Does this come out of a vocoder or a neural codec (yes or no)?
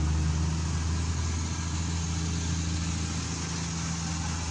no